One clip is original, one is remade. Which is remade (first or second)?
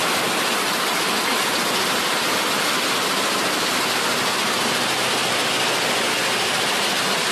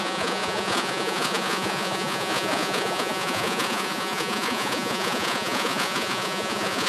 second